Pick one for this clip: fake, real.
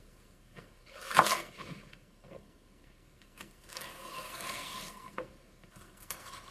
fake